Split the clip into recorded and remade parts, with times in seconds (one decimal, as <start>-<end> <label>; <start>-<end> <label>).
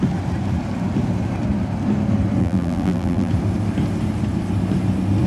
0.0-2.4 recorded; 2.4-3.3 remade; 3.3-5.3 recorded